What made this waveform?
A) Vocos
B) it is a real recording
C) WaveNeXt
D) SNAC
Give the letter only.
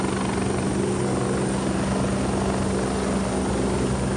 B